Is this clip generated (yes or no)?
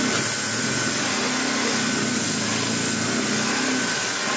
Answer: no